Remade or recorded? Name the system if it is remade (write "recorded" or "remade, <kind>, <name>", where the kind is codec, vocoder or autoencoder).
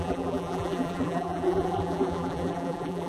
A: remade, vocoder, BigVGAN v2